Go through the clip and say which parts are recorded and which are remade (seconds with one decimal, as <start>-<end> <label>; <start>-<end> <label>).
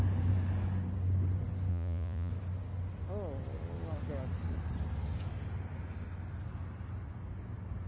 0.0-1.7 recorded; 1.7-2.3 remade; 2.3-7.9 recorded